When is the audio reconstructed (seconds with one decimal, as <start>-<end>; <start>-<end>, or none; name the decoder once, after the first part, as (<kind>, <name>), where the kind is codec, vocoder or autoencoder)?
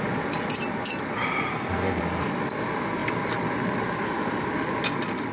1.5-2.0 (codec, SNAC)